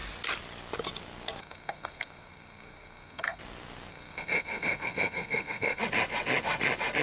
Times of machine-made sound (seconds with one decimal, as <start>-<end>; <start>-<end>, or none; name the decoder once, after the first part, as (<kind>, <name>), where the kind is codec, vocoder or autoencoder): 1.4-3.4 (codec, SNAC); 3.9-5.8